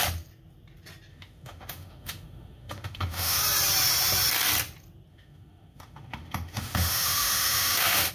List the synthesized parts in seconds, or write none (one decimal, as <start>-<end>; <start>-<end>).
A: 1.1-3.4; 5.1-8.1

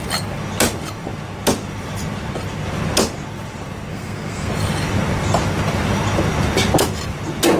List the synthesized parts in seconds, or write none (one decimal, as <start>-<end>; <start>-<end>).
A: 3.9-4.5

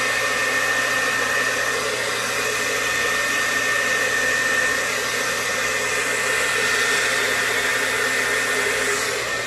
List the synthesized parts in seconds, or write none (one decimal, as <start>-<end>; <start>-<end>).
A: none

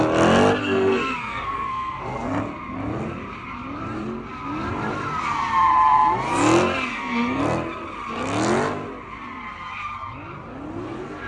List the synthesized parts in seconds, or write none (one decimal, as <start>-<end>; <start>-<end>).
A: 0.6-2.4; 6.9-7.4

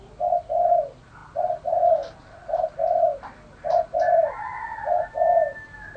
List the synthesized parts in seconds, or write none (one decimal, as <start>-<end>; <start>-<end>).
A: none

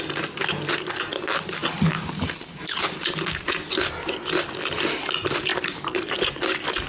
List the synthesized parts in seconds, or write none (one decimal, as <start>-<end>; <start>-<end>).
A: 1.6-3.1; 5.5-6.3

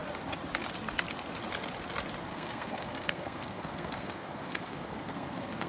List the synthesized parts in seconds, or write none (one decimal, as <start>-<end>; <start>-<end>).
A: 2.2-5.7